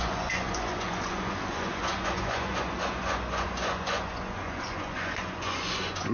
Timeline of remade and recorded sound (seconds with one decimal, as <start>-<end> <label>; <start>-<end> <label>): 0.0-6.1 remade